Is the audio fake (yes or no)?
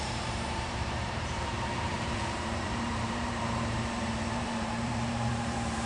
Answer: yes